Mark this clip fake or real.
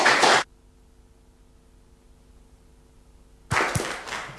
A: real